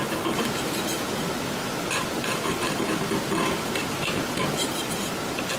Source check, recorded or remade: recorded